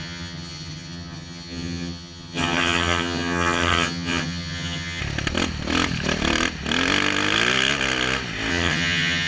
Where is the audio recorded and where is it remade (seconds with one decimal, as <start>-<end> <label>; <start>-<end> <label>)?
0.0-5.0 remade; 5.0-8.5 recorded; 8.5-9.3 remade